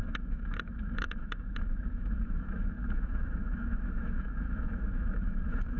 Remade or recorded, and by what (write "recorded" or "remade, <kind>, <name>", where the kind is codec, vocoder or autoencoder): remade, autoencoder, DAC-VAE